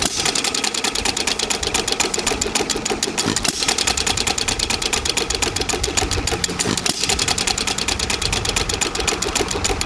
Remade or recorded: recorded